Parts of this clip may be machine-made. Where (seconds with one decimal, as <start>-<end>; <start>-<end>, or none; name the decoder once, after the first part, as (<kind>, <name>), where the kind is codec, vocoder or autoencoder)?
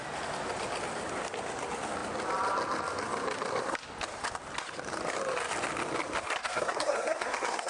6.4-7.7 (codec, SNAC)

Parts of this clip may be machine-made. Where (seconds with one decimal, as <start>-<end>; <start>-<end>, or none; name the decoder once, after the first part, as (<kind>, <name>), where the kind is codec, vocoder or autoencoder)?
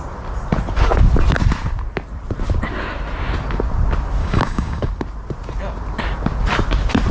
4.2-4.9 (codec, DAC)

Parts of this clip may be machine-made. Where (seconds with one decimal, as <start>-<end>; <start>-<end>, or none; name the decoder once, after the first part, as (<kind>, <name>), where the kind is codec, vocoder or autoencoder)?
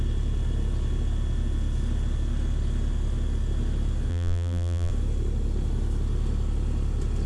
4.1-4.9 (vocoder, BigVGAN v2)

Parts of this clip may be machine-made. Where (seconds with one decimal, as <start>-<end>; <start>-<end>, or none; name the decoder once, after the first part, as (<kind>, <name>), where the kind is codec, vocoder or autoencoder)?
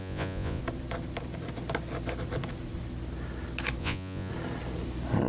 0.0-0.6 (vocoder, Vocos); 3.8-4.3